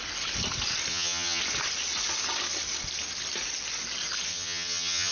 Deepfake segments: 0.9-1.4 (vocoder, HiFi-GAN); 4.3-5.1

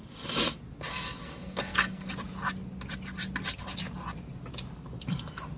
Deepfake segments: 0.9-2.1 (codec, SNAC)

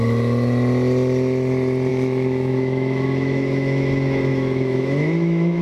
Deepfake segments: 1.9-5.6 (autoencoder, DAC-VAE)

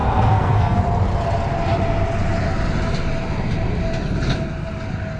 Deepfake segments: 0.0-0.8 (codec, SNAC)

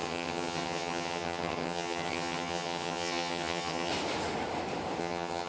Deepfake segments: 0.0-3.9 (vocoder, HiFi-GAN); 5.0-5.5

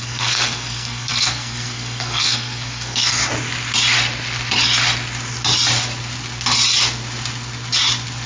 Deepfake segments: 0.0-3.2 (codec, SNAC)